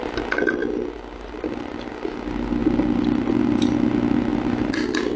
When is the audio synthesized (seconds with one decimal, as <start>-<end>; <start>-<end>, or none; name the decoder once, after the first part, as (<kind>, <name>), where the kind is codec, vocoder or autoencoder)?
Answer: none